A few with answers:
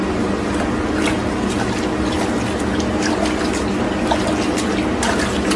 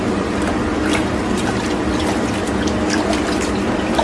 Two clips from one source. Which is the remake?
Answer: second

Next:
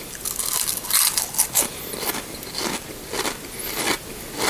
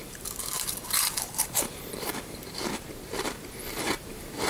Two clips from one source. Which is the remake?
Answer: second